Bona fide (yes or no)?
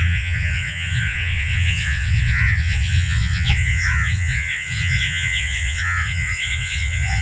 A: no